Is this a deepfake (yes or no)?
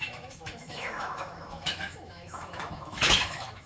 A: yes